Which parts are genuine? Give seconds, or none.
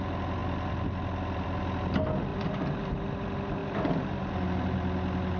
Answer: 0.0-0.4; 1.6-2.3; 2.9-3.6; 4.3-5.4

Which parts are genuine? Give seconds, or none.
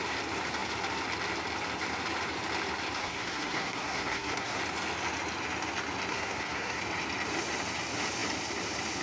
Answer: 0.0-3.0; 4.6-6.1; 6.8-9.0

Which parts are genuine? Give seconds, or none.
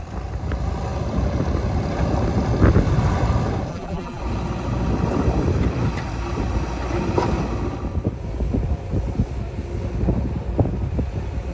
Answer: 0.0-3.7; 4.2-11.5